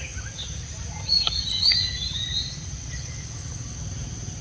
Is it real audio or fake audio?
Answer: real